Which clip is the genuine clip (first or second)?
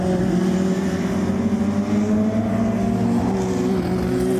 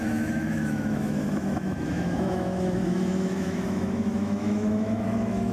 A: first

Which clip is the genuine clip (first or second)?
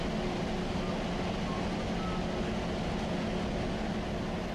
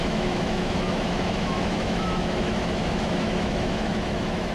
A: first